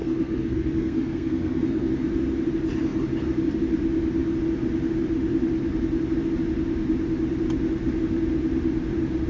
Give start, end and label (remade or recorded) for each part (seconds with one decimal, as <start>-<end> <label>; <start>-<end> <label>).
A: 0.0-1.9 remade; 1.9-9.3 recorded